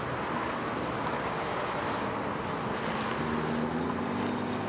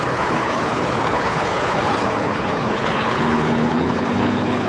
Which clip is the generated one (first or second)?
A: second